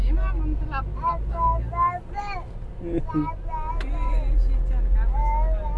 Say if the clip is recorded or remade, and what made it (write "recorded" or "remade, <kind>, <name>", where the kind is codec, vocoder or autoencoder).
recorded